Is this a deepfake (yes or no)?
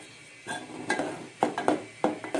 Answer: no